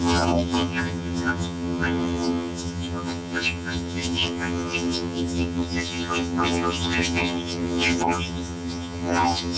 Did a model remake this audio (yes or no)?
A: yes